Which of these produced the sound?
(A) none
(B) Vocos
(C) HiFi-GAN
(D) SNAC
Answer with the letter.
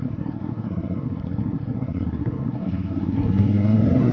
D